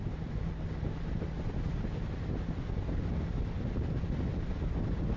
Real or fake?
real